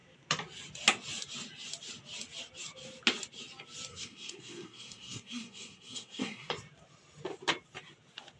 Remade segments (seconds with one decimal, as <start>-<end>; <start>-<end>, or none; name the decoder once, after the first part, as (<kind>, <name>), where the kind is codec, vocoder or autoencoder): 3.9-6.5 (codec, SNAC)

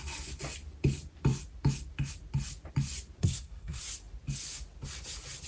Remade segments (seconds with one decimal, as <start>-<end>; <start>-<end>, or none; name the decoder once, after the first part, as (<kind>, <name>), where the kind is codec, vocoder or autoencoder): 3.2-3.8 (codec, SNAC)

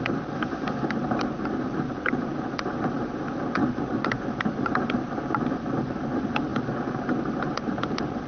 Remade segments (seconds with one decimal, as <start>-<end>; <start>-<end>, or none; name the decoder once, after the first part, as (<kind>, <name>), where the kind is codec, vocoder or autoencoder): none

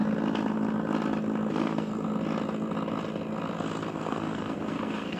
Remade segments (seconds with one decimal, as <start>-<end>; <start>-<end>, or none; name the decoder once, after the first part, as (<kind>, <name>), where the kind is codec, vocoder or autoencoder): 1.5-1.9 (codec, SNAC); 3.9-5.2

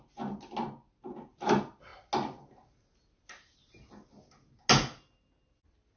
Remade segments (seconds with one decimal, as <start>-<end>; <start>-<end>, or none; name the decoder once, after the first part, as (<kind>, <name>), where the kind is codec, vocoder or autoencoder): none

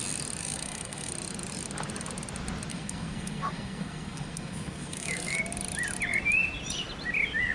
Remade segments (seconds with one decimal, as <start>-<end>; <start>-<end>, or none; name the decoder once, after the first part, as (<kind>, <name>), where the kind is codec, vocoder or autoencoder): 0.4-1.1 (codec, SNAC); 2.7-5.4

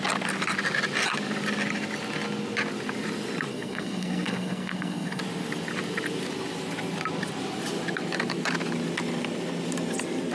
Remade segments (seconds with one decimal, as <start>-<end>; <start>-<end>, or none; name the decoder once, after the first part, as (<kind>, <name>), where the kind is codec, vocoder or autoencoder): 3.5-5.2 (codec, SNAC)